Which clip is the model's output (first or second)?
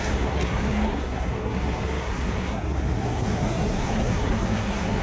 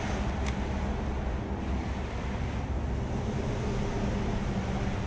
first